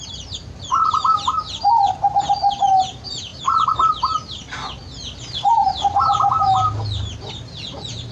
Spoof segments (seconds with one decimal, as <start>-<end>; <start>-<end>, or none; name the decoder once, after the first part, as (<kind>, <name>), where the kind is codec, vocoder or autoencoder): none